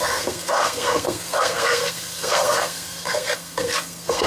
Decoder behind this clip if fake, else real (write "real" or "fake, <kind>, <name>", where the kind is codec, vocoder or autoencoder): fake, codec, SNAC